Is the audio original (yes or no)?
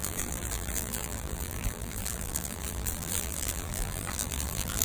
no